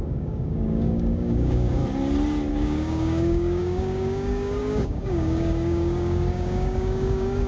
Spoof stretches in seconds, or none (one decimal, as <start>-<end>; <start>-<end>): 0.0-1.8; 2.5-7.5